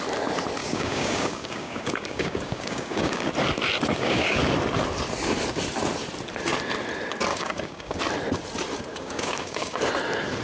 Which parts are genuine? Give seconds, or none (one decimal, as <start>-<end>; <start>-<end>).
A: 0.0-0.6; 3.3-3.9; 4.4-7.3; 8.0-8.9; 9.8-10.4